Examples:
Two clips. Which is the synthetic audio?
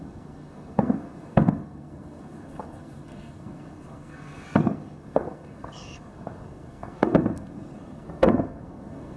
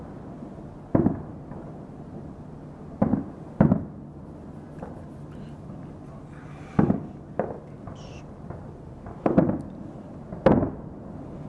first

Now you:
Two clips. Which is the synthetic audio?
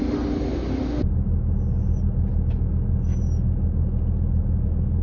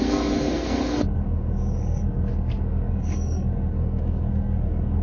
second